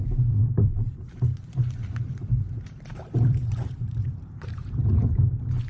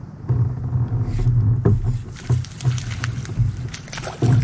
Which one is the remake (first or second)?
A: first